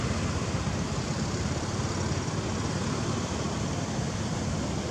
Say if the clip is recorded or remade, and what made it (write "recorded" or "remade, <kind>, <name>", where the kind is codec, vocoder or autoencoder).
remade, vocoder, BigVGAN v2